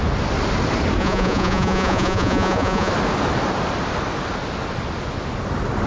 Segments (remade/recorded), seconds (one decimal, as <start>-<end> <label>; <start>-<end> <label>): 0.0-1.0 recorded; 1.0-2.9 remade; 2.9-5.9 recorded

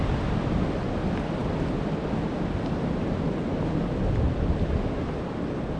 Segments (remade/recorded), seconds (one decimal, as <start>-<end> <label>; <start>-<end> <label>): 0.0-5.8 recorded

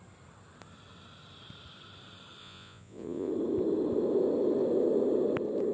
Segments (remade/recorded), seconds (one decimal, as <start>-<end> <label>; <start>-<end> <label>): 0.0-2.4 recorded; 2.4-3.3 remade; 3.3-5.7 recorded

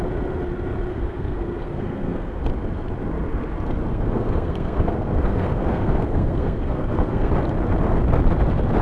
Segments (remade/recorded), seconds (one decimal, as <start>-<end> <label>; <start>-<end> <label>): 0.0-0.9 recorded; 0.9-2.4 remade; 2.4-3.9 recorded; 3.9-7.3 remade; 7.3-8.8 recorded